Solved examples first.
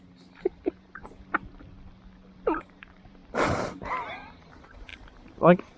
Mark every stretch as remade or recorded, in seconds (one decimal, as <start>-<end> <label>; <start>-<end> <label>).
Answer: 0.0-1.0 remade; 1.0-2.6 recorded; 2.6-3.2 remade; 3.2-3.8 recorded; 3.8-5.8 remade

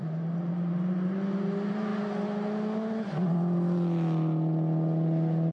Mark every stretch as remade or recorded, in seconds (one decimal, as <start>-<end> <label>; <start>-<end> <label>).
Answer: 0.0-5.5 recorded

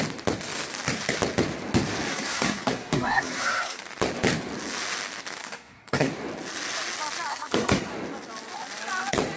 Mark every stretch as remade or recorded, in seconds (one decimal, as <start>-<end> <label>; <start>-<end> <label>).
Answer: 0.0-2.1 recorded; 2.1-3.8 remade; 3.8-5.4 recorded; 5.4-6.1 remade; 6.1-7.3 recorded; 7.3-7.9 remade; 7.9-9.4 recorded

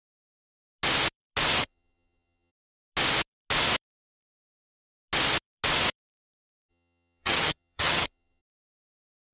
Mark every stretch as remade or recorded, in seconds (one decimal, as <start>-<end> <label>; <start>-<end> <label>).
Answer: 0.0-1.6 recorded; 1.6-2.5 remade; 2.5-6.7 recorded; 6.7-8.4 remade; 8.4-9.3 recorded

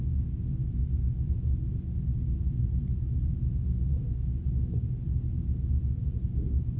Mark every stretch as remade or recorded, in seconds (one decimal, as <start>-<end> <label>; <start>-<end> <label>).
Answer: 0.0-6.8 recorded

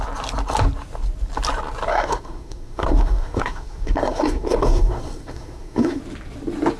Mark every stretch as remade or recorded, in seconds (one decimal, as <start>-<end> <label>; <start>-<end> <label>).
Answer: 0.0-1.9 recorded; 1.9-6.0 remade; 6.0-6.8 recorded